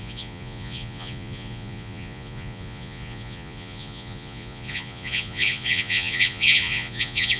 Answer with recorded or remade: remade